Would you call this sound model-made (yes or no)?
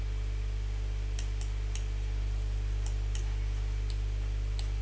no